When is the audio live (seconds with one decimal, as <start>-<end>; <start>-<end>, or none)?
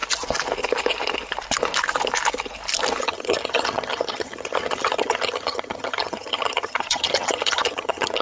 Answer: 0.0-3.0